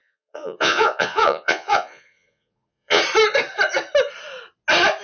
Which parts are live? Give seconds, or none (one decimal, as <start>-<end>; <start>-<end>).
3.0-5.0